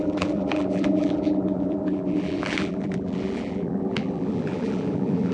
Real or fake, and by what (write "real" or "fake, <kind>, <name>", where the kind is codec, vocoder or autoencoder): fake, vocoder, BigVGAN v2